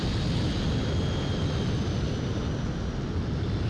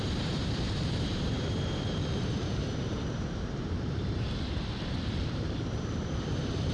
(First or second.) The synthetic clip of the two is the second